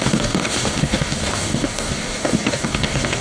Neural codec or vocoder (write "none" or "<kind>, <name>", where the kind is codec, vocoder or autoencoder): codec, DAC